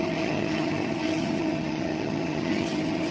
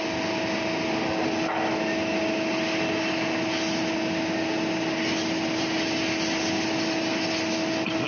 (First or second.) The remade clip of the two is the first